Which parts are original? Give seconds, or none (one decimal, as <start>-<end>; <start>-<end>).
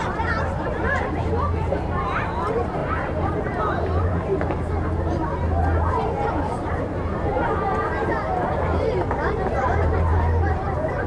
2.8-4.0; 5.2-6.1; 7.3-8.5